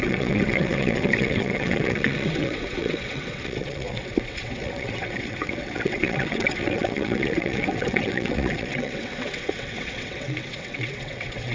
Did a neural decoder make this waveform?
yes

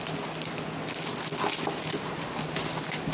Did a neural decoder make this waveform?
no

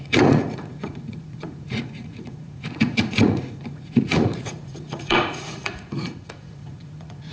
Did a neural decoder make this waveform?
yes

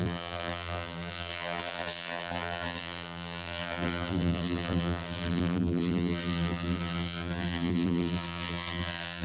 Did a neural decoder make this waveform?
yes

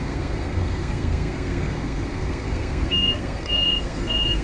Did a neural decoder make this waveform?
yes